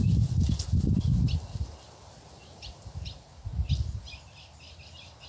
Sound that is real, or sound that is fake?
real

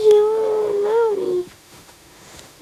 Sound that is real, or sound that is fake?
fake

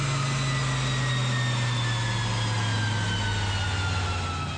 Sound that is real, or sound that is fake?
real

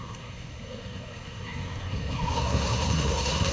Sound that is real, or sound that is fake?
fake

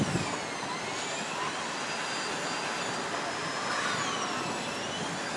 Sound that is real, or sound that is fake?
real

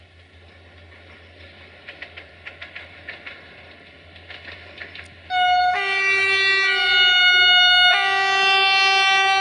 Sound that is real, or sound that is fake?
real